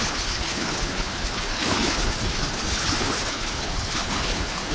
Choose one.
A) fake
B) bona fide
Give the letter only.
A